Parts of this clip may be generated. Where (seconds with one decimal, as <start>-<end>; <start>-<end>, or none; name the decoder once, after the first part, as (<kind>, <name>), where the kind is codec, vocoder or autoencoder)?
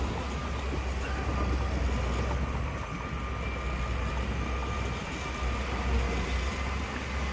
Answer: none